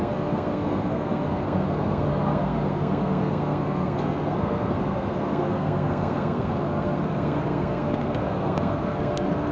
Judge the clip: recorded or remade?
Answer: remade